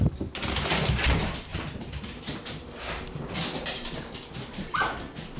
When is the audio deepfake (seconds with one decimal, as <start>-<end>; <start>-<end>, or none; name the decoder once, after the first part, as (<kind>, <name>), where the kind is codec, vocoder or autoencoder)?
1.5-4.7 (vocoder, BigVGAN v2)